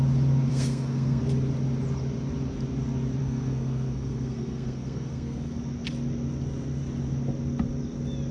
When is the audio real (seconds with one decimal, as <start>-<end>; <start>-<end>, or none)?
0.0-0.5; 1.2-3.2; 5.6-8.3